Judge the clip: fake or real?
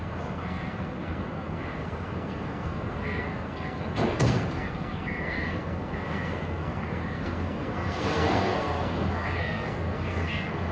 fake